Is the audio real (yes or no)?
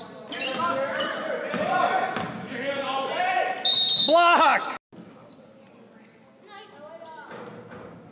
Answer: yes